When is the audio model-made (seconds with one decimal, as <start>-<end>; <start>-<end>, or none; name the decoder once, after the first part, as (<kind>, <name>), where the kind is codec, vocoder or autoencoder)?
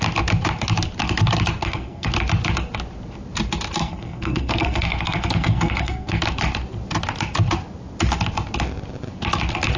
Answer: 1.6-2.1 (codec, SNAC); 3.8-6.2